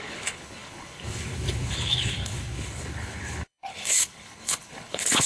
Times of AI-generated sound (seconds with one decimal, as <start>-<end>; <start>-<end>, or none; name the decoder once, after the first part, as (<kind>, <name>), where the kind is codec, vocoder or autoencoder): 0.0-5.3 (codec, HILCodec)